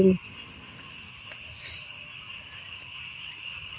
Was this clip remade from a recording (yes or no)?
no